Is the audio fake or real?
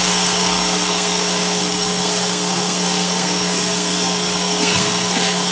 fake